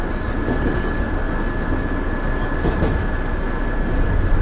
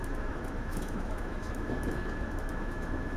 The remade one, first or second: second